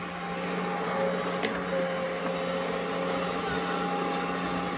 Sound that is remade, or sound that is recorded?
recorded